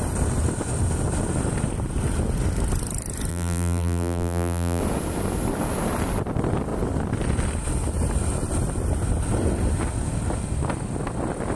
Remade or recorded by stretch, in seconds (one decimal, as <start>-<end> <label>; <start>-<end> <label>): 0.0-3.3 recorded; 3.3-4.8 remade; 4.8-11.6 recorded